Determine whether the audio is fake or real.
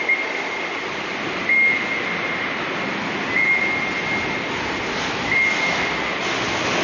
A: real